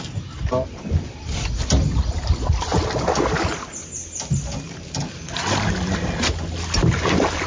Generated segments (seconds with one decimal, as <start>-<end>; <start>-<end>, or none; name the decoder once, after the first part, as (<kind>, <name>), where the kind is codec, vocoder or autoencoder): none